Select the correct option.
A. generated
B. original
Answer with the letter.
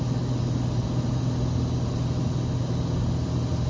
B